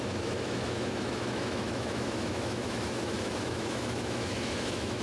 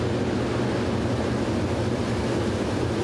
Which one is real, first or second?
second